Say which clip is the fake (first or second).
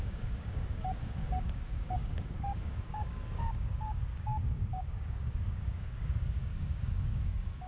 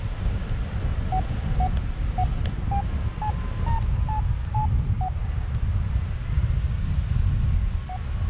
first